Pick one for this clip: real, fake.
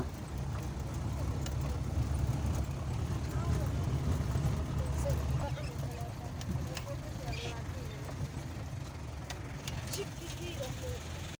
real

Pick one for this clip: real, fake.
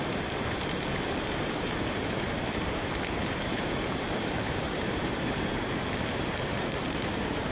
fake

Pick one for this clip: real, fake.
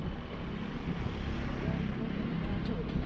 real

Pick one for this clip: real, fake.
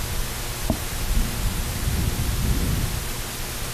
real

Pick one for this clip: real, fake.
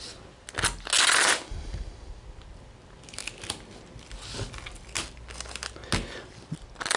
real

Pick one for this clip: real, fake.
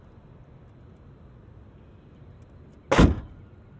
real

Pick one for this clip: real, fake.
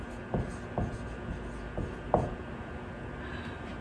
real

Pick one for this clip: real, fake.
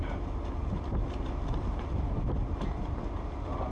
real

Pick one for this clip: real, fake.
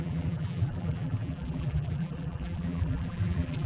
fake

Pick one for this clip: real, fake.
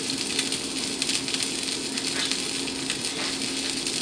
real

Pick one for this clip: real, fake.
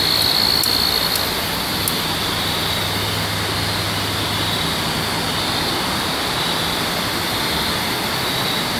real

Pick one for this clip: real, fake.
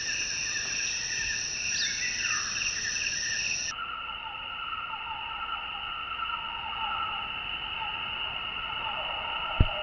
real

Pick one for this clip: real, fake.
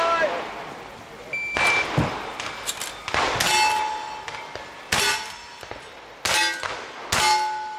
real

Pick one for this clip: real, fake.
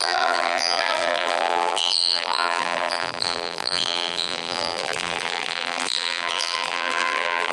fake